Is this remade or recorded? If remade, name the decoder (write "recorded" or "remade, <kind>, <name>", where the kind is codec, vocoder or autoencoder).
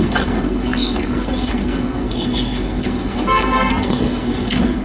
remade, codec, SNAC